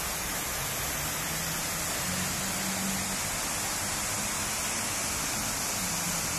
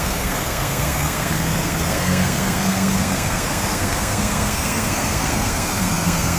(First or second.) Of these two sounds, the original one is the first